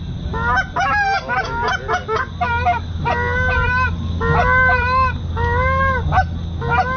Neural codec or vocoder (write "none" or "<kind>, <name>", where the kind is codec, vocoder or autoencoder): none